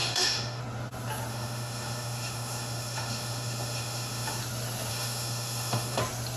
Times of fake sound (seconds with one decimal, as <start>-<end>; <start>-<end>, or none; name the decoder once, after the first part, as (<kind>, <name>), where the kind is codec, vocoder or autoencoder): 0.0-0.6 (autoencoder, DAC-VAE); 1.3-4.4; 4.9-6.0